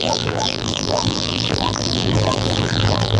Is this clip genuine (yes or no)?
no